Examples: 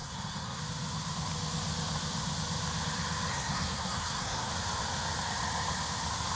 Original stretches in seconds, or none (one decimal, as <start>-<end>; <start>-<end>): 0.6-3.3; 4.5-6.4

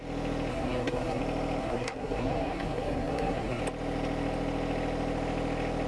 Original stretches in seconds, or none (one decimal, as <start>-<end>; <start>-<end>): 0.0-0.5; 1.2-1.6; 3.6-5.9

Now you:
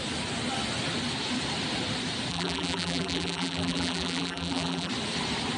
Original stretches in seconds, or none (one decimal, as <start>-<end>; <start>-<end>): 0.0-2.3; 4.9-5.6

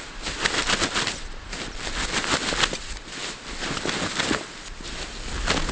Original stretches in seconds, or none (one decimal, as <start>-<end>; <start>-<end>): 0.0-5.7

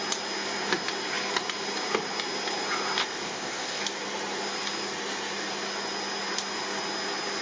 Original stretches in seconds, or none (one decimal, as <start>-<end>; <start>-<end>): 0.0-3.0; 3.8-7.4

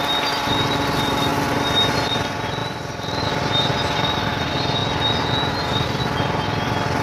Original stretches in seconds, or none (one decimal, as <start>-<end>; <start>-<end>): 0.0-7.0